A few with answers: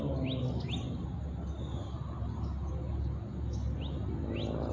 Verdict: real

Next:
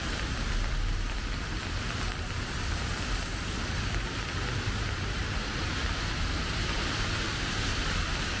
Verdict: fake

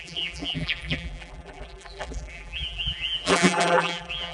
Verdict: fake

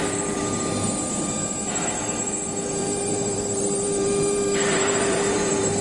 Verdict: fake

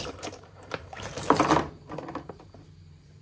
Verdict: fake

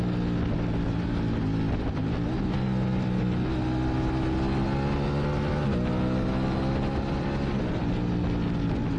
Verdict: real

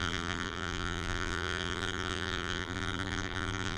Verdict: fake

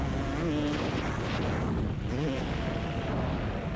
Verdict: real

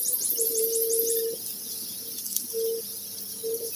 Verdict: real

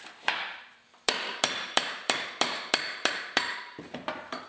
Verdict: fake